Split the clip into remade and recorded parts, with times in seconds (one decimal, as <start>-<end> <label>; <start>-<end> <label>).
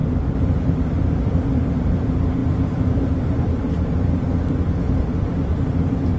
0.0-5.5 remade; 5.5-6.2 recorded